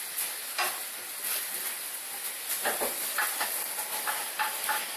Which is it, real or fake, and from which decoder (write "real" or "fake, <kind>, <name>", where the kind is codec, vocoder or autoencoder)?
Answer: real